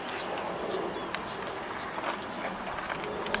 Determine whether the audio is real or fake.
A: real